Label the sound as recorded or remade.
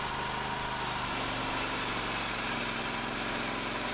recorded